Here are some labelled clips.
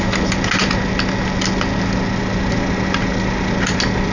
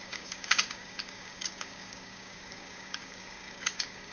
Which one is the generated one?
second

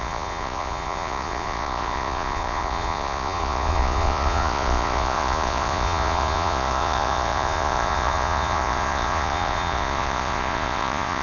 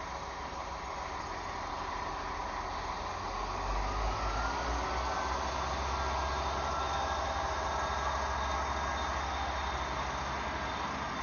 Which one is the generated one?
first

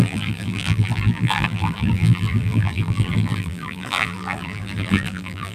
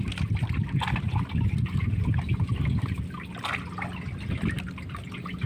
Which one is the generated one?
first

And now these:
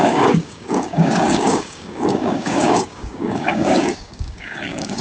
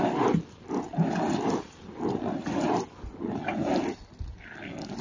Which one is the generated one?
first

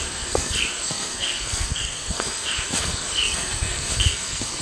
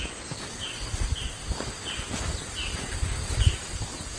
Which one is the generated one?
first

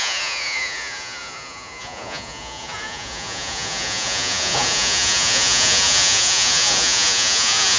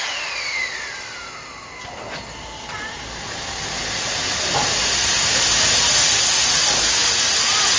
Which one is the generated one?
first